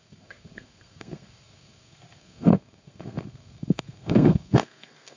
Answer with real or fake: fake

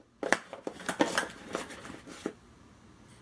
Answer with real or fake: real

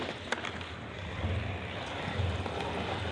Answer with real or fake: real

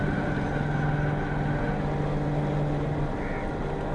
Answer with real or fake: real